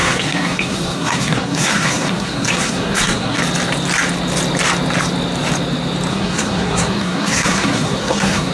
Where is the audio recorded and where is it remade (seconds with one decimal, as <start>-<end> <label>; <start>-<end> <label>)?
0.0-3.4 remade; 3.4-6.1 recorded; 6.1-8.5 remade